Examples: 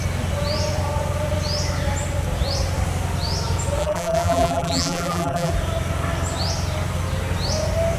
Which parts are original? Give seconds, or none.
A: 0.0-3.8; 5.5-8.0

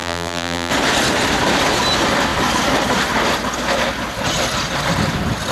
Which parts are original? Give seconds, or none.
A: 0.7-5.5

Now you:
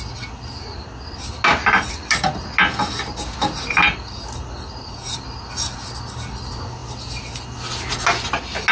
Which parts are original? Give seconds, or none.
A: 0.0-8.7

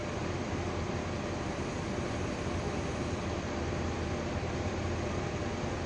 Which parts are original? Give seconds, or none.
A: none

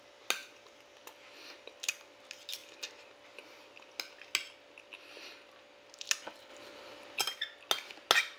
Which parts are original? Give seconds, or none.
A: 0.0-8.4

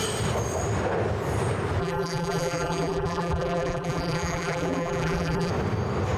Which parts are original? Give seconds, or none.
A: 0.0-1.8; 5.5-6.2